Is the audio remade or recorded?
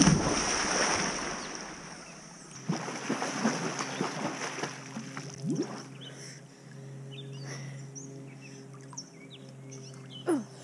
recorded